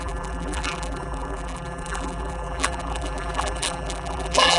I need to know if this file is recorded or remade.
remade